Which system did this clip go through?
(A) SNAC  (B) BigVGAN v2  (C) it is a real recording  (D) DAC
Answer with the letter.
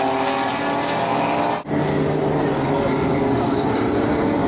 C